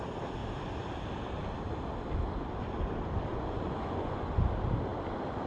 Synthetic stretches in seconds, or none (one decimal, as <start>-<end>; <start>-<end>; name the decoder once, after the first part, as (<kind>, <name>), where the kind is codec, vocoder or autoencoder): 3.3-4.3 (vocoder, Vocos)